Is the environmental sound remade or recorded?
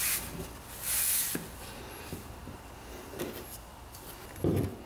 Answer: recorded